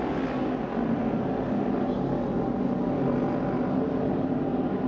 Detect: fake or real real